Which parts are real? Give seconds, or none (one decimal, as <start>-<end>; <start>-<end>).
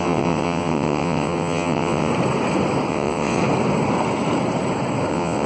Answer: 2.1-2.9; 3.4-5.1